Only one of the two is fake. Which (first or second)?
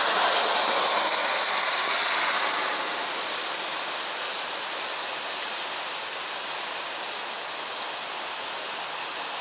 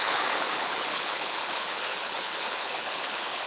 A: second